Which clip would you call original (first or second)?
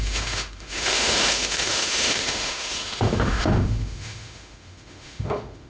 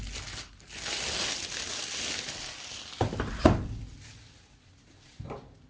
second